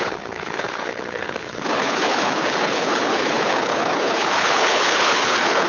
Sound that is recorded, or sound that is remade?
remade